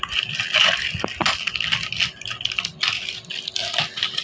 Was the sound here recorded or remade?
recorded